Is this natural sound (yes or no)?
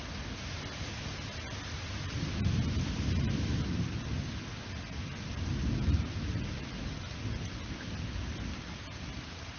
yes